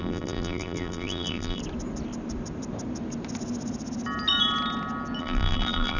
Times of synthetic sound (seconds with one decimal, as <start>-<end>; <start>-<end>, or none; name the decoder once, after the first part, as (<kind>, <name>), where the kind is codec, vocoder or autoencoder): 0.0-1.6 (vocoder, BigVGAN v2); 5.2-6.0